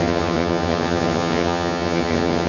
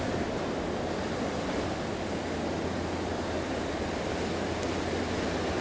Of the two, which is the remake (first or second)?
first